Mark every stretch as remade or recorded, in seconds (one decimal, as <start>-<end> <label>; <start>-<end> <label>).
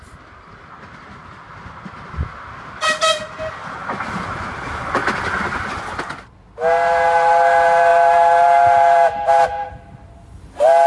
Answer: 0.0-10.9 recorded